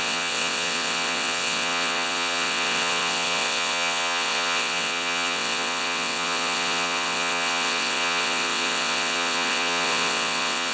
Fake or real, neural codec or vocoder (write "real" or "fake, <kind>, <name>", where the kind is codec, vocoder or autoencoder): fake, vocoder, WaveNeXt